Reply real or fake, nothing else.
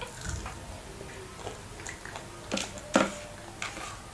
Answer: real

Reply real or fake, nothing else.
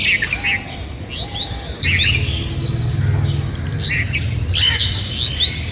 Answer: real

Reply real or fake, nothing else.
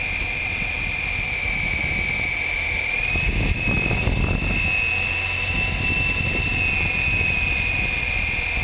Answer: real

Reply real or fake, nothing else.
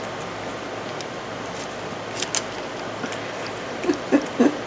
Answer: real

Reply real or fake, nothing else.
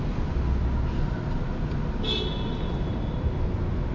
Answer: real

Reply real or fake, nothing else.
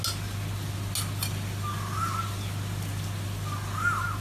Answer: real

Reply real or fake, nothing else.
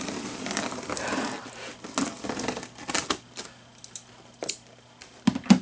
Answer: real